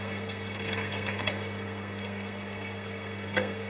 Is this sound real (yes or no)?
no